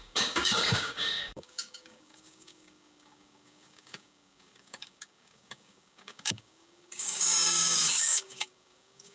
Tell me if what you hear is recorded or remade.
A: remade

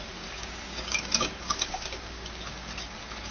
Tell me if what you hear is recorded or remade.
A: remade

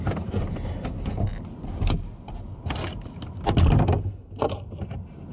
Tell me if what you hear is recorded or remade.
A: recorded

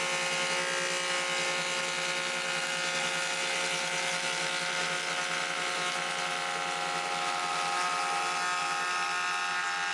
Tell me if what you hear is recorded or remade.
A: recorded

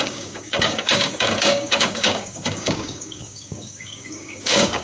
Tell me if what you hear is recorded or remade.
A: remade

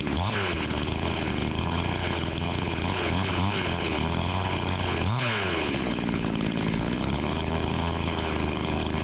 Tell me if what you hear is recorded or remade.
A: remade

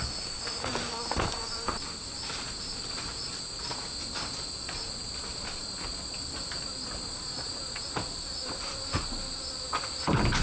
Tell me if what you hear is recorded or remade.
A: recorded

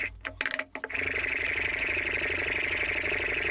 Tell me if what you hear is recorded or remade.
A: recorded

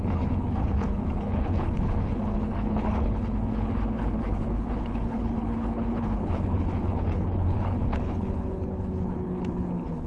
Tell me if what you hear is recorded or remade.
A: remade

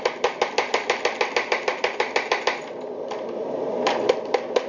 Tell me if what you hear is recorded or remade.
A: remade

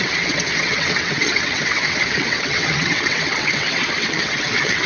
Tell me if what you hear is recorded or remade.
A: remade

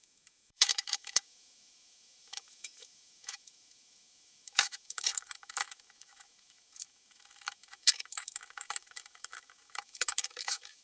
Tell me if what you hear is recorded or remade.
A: remade